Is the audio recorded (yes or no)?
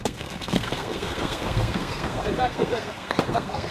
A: no